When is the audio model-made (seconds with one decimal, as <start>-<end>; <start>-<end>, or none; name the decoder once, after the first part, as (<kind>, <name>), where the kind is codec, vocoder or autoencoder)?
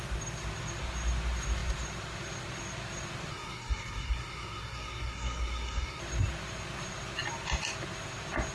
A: 3.3-6.0 (codec, SNAC)